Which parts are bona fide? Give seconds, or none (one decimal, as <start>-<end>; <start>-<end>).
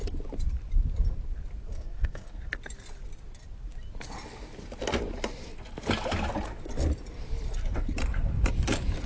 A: 0.0-1.7; 2.4-9.1